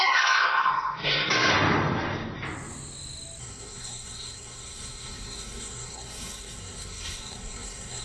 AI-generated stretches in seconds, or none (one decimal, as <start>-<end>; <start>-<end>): 0.0-1.5; 3.4-8.0